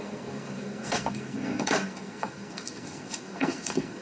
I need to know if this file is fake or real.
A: fake